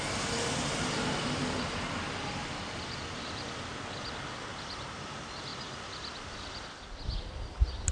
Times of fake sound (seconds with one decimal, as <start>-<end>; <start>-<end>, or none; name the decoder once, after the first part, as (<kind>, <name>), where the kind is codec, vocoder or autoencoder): none